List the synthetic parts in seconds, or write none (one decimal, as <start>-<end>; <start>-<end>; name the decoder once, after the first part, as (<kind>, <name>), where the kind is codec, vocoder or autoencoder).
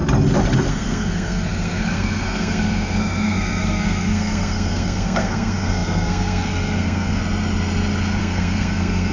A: 0.7-7.2 (codec, SNAC); 8.2-9.1